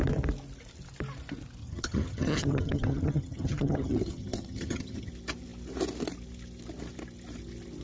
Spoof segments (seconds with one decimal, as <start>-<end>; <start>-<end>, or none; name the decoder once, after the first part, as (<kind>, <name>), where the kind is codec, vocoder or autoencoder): 1.6-5.1 (vocoder, HiFi-GAN)